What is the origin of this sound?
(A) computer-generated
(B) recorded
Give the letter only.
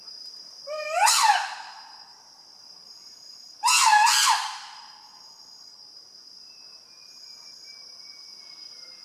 B